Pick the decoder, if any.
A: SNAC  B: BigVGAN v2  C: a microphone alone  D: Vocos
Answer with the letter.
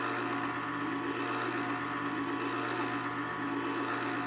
C